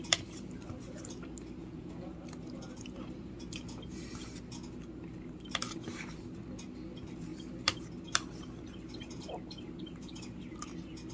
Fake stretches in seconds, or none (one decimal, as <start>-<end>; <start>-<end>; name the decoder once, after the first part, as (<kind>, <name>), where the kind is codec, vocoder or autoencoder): 1.6-2.1 (vocoder, Vocos)